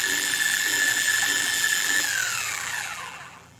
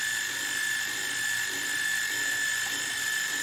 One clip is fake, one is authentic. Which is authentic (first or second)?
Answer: second